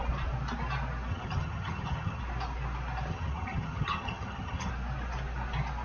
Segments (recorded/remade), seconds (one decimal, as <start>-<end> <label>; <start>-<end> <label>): 0.0-1.1 recorded; 1.1-2.2 remade; 2.2-3.1 recorded; 3.1-4.7 remade; 4.7-5.8 recorded